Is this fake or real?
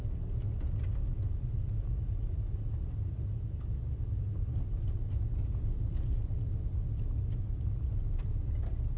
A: real